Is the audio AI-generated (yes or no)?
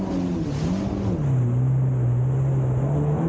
no